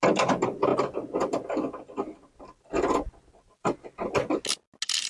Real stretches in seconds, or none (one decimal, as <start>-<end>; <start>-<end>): 0.0-5.1